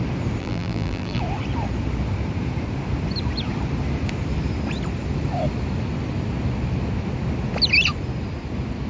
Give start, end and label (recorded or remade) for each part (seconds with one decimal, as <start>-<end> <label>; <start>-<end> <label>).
0.0-0.4 recorded; 0.4-1.2 remade; 1.2-8.9 recorded